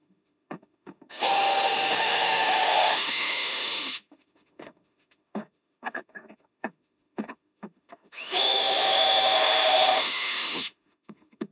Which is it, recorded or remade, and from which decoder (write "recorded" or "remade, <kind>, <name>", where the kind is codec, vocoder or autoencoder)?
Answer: remade, autoencoder, DAC-VAE